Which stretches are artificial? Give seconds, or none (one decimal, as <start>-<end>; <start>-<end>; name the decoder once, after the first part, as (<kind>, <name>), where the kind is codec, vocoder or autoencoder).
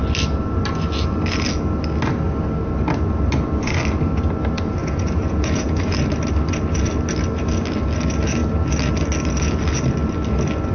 4.8-5.8 (vocoder, Vocos)